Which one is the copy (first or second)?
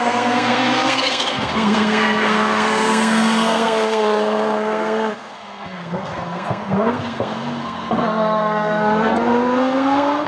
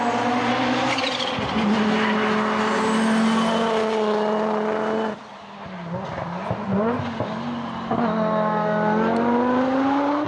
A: first